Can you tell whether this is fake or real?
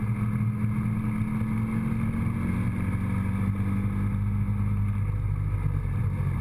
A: real